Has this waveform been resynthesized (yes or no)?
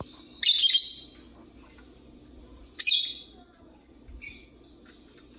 no